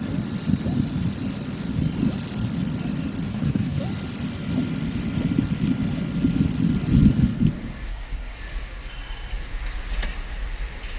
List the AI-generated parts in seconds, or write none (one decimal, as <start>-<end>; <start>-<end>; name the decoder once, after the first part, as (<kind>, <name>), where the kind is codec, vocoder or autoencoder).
3.3-3.8 (codec, SNAC); 7.9-8.4